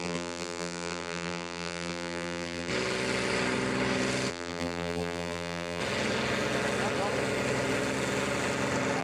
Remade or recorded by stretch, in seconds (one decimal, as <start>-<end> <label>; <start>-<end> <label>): 0.0-2.7 remade; 2.7-4.3 recorded; 4.3-5.8 remade; 5.8-9.0 recorded